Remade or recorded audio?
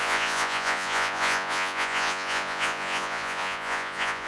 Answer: remade